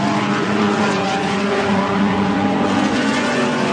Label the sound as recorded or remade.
remade